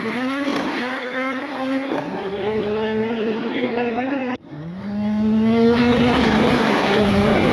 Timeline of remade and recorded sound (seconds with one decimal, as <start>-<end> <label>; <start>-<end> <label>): 0.0-7.5 remade